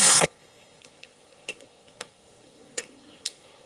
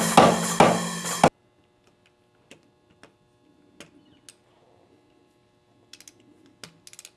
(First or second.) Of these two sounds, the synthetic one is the first